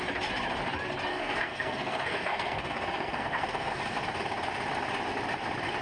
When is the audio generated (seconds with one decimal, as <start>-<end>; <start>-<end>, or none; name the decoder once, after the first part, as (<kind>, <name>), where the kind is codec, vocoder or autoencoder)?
1.1-3.8 (codec, SNAC)